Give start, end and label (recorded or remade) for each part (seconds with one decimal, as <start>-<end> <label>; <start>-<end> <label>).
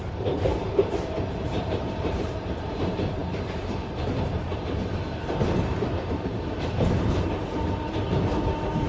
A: 0.0-8.9 remade